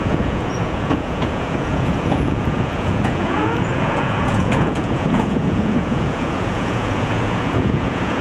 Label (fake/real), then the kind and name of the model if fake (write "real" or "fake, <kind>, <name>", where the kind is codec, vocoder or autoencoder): fake, vocoder, Vocos